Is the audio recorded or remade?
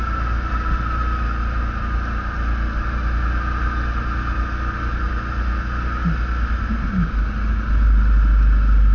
recorded